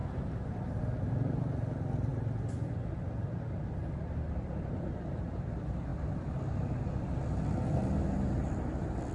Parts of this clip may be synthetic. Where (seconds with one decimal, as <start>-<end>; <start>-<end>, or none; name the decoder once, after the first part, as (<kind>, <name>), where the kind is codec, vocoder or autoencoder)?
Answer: none